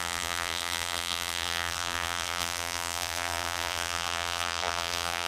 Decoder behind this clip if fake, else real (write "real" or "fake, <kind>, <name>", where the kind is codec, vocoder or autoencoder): fake, vocoder, BigVGAN v2